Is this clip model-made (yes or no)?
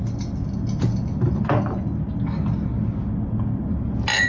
no